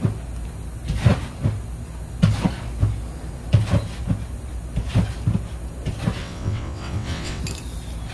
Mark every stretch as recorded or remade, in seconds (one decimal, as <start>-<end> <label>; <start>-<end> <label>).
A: 0.0-6.2 recorded; 6.2-7.4 remade; 7.4-8.1 recorded